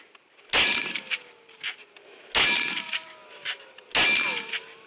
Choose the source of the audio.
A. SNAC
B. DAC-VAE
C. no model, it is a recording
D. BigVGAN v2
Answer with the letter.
C